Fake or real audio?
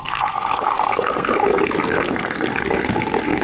fake